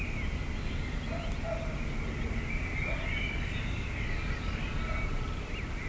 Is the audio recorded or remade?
recorded